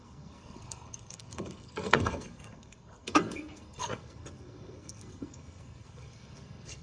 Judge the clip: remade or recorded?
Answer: remade